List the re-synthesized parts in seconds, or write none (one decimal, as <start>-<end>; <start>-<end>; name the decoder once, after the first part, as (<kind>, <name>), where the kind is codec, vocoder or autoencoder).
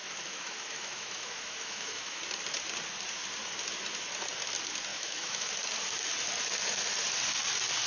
0.0-2.2 (autoencoder, DAC-VAE); 4.9-5.5